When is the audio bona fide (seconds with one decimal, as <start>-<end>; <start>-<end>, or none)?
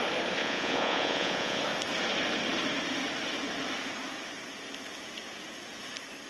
0.0-0.4; 1.6-6.3